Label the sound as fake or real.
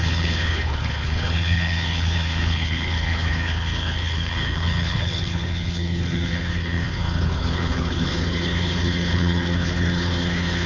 fake